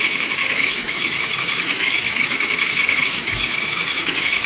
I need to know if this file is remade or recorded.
remade